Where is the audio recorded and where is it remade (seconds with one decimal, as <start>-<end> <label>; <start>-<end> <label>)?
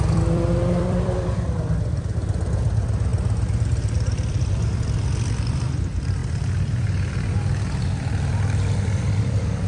0.0-9.7 remade